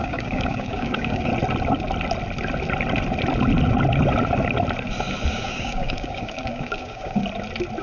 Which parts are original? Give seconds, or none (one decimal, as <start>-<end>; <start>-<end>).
1.3-5.3; 7.2-7.8